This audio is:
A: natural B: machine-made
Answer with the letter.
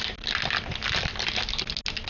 A